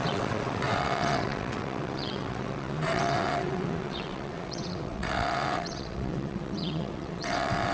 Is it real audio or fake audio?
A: fake